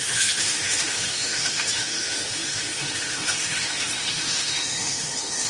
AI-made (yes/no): yes